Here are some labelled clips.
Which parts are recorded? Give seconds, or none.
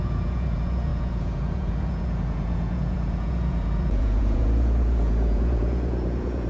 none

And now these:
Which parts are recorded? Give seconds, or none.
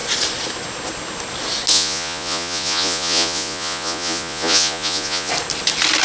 0.0-1.7; 5.3-6.0